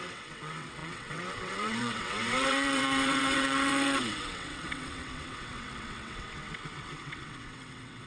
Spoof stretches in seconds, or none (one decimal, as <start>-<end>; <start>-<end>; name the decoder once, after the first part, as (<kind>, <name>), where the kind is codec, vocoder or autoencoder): 0.0-8.1 (vocoder, WaveNeXt)